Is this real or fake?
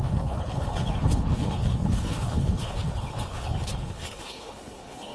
fake